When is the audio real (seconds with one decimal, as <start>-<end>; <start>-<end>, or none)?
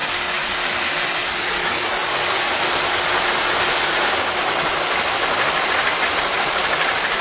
0.0-7.2